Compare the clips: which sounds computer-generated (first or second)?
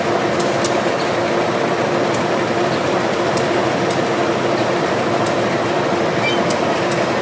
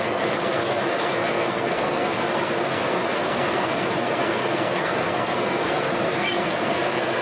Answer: second